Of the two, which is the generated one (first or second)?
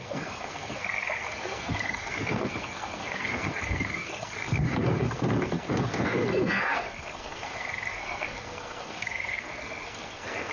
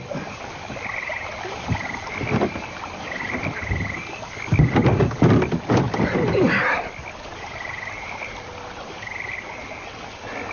first